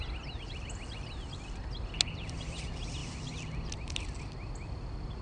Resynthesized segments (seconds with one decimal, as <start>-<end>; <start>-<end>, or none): none